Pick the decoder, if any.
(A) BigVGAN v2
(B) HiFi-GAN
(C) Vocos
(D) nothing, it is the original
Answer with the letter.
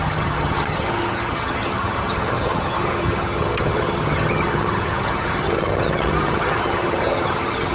B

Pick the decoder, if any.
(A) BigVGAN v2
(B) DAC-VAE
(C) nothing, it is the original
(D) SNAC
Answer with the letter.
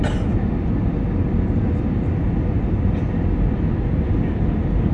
C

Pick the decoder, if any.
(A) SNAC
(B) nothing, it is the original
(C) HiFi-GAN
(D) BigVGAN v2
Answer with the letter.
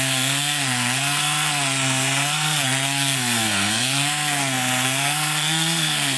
A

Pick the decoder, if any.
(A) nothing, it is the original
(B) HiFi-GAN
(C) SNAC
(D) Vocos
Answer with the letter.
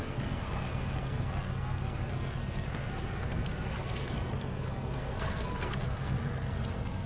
C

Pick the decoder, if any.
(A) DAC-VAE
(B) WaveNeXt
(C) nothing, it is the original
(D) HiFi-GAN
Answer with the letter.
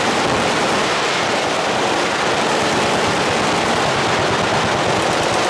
C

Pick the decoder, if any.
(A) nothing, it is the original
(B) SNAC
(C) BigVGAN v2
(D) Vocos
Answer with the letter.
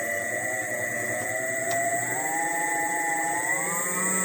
D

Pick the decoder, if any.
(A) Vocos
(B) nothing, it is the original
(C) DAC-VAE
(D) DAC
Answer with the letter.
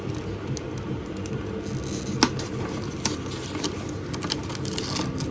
B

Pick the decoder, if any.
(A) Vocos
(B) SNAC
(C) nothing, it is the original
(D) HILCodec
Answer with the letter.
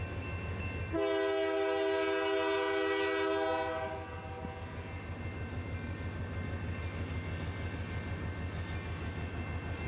C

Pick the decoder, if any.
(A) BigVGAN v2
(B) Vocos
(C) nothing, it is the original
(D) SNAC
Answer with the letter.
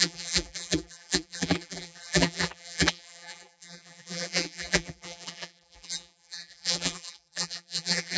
A